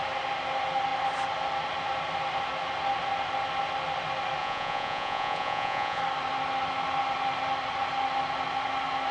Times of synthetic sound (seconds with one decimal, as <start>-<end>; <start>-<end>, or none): 4.4-6.0